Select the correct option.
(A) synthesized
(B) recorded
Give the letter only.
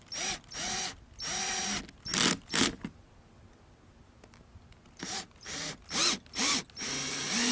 B